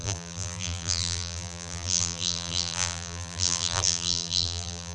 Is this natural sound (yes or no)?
no